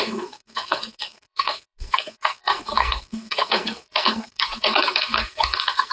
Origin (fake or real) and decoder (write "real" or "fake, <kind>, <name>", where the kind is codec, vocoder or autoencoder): fake, codec, SNAC